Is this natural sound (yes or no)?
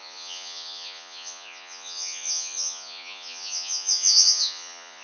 no